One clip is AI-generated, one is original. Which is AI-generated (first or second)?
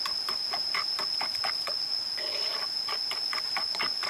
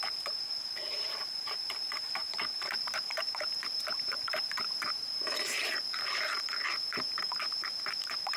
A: second